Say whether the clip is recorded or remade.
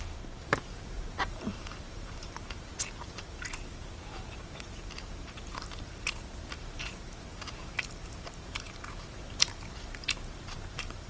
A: remade